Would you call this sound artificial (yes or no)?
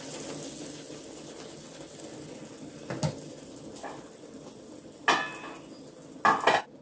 no